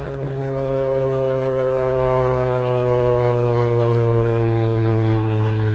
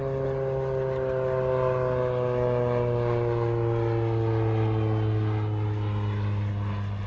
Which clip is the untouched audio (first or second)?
second